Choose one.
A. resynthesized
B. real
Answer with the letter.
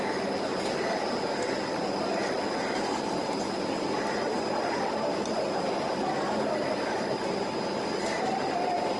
B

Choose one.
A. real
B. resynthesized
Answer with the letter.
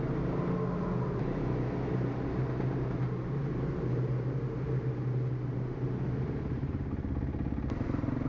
A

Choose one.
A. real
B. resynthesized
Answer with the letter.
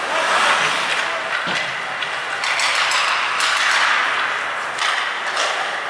A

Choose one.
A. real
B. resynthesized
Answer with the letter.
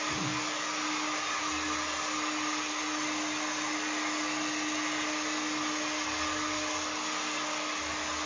A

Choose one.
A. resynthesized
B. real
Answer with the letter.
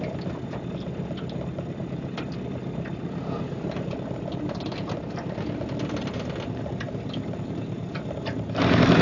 B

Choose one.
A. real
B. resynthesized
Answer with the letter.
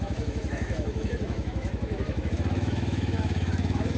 B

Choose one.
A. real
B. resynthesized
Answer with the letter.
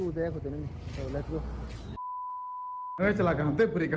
A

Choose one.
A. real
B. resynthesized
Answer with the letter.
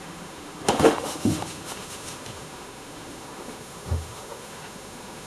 B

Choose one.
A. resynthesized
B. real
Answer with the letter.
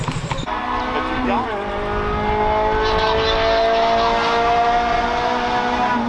B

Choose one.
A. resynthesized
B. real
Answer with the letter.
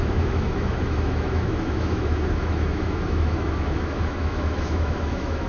A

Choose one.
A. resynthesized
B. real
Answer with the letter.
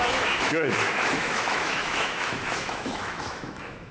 A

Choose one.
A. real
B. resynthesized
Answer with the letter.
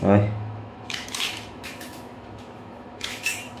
B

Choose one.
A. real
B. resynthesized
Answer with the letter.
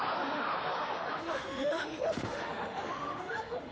B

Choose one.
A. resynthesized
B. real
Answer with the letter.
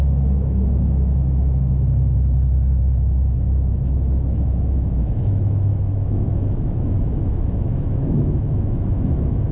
A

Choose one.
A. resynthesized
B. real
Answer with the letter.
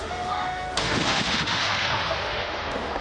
A